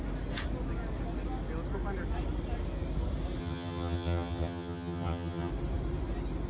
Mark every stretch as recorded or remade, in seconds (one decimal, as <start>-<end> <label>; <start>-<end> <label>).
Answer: 0.0-3.4 recorded; 3.4-5.5 remade; 5.5-6.5 recorded

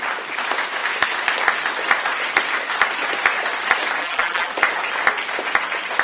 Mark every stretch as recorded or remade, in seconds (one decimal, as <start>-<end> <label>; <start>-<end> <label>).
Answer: 0.0-4.0 recorded; 4.0-4.5 remade; 4.5-6.0 recorded

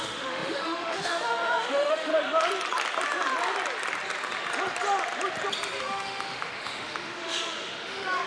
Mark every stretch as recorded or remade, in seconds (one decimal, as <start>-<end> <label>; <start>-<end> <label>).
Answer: 0.0-2.1 remade; 2.1-5.8 recorded; 5.8-8.3 remade

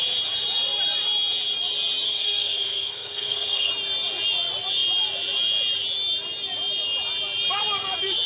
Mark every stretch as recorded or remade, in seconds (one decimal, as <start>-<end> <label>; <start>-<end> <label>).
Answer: 0.0-2.1 recorded; 2.1-3.7 remade; 3.7-8.3 recorded

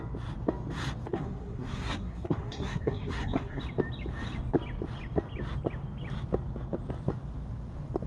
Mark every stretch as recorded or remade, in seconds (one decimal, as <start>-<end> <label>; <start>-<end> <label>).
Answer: 0.0-1.1 recorded; 1.1-3.6 remade; 3.6-8.1 recorded

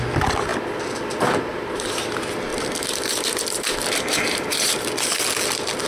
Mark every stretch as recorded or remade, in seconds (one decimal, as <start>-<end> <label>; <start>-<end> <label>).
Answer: 0.0-1.5 recorded; 1.5-2.1 remade; 2.1-2.5 recorded; 2.5-4.9 remade; 4.9-5.9 recorded

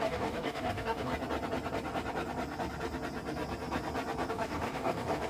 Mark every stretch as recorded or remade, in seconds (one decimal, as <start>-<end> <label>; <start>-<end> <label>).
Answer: 0.0-1.1 remade; 1.1-4.3 recorded; 4.3-5.3 remade

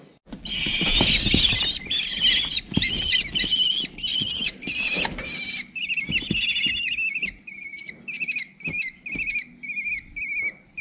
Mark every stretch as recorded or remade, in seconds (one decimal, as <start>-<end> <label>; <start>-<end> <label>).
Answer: 0.0-10.8 recorded